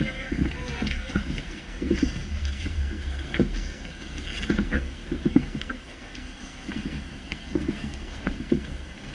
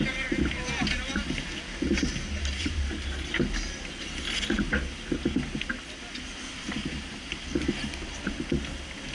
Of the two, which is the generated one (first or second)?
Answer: first